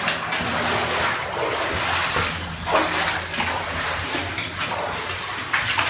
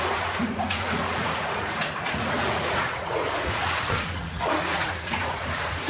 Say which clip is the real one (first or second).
first